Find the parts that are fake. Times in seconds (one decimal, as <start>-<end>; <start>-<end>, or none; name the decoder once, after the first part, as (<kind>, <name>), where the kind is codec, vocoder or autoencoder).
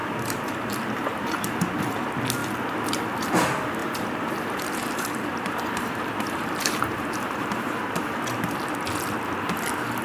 0.0-1.9 (vocoder, BigVGAN v2); 2.4-2.9; 3.8-7.9